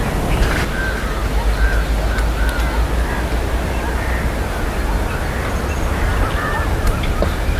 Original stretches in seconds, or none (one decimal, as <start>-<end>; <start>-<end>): 0.0-7.6